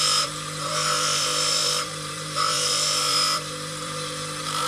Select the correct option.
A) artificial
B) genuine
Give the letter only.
A